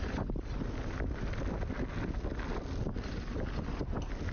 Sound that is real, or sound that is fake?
real